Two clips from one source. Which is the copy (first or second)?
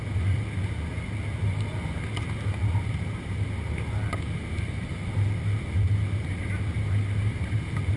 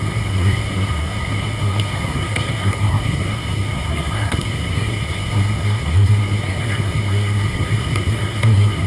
second